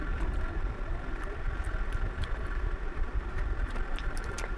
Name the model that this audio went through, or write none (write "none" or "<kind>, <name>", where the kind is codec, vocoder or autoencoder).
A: none